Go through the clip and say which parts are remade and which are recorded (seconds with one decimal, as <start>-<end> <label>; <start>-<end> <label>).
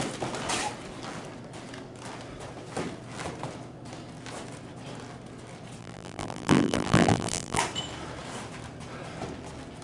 0.0-5.8 recorded; 5.8-7.6 remade; 7.6-9.8 recorded